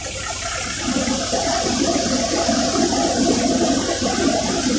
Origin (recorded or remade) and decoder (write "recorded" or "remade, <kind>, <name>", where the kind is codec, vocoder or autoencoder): recorded